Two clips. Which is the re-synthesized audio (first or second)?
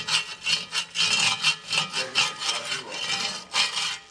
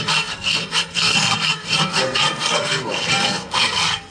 second